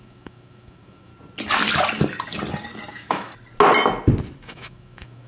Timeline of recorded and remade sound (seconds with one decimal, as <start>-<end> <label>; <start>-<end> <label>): 0.0-1.1 remade; 1.1-2.9 recorded; 2.9-3.3 remade; 3.3-4.4 recorded; 4.4-5.3 remade